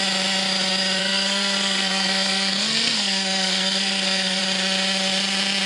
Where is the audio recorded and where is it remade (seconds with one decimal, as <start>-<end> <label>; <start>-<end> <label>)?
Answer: 0.0-1.0 recorded; 1.0-4.4 remade; 4.4-5.7 recorded